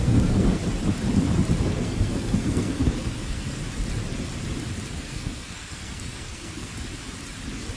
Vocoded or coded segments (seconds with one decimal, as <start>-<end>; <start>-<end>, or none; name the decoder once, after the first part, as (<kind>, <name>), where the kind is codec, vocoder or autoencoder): 0.0-0.6 (codec, SNAC); 1.6-3.6; 4.9-6.7